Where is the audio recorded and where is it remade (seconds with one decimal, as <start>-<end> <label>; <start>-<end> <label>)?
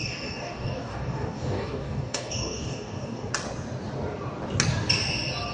0.0-3.3 remade; 3.3-5.5 recorded